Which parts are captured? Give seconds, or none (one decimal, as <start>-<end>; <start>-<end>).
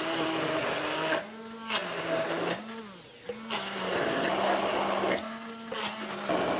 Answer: 0.0-6.6